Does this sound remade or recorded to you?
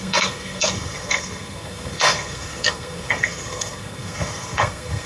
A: remade